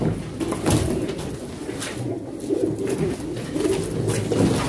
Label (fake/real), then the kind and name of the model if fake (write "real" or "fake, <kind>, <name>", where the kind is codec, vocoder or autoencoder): real